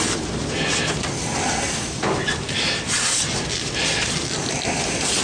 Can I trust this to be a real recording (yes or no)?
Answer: yes